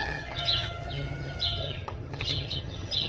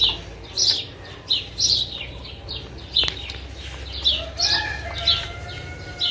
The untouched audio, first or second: second